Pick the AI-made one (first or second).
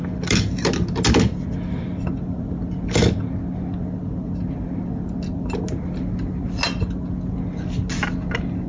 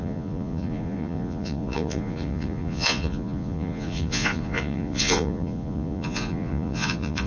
second